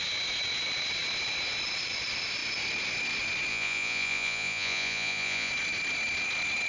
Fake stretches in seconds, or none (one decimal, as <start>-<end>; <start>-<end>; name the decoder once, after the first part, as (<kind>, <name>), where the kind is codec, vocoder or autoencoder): 3.5-5.5 (vocoder, Vocos)